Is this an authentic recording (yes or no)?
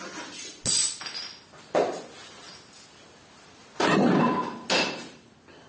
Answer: yes